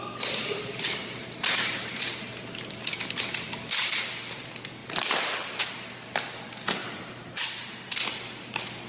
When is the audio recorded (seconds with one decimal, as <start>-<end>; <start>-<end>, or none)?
0.0-0.4; 2.3-4.8; 5.6-6.8; 7.8-8.9